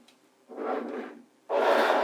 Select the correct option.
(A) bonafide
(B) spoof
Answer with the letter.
A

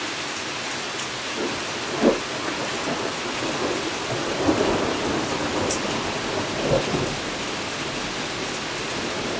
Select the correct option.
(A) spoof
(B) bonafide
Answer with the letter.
B